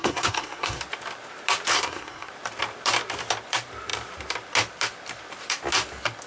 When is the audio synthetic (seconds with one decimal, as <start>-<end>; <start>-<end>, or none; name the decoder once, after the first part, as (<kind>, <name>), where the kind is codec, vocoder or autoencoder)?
0.0-0.8 (codec, SNAC); 1.7-2.3